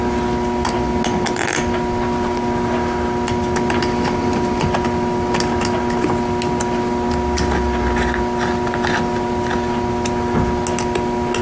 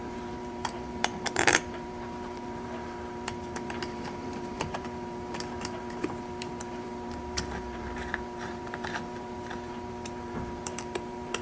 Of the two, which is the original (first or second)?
first